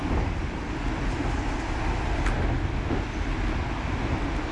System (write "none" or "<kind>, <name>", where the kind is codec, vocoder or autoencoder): none